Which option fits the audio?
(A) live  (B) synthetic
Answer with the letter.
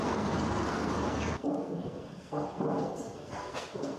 B